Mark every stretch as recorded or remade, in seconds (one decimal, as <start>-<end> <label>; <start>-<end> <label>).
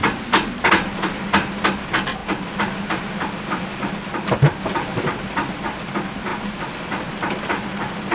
0.0-8.1 recorded